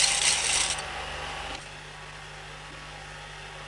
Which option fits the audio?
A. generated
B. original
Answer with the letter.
B